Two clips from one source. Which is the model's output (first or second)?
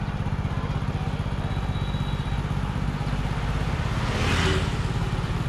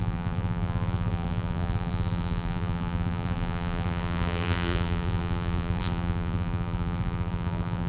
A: second